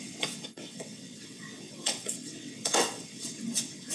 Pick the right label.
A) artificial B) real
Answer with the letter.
A